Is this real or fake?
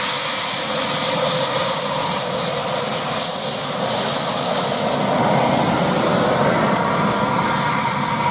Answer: real